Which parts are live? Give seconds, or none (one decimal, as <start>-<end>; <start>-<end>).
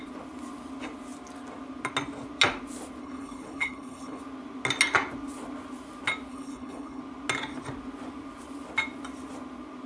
0.0-3.0; 4.2-6.3; 7.0-9.9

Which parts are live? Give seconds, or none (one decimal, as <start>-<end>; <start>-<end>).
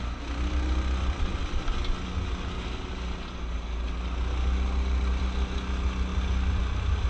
0.0-7.1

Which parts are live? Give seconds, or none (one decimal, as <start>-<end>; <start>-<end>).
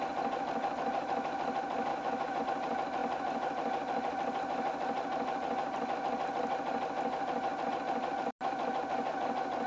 0.0-1.9; 2.4-9.7